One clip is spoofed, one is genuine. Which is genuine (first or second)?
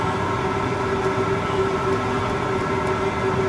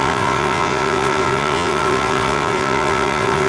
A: first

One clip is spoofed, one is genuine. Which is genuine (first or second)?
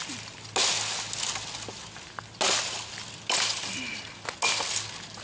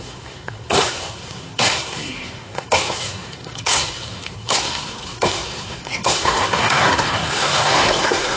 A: first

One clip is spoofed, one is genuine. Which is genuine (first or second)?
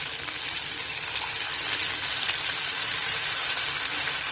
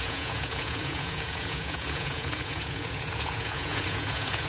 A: first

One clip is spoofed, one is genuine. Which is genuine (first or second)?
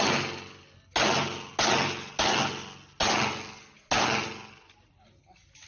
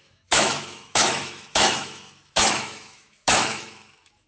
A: first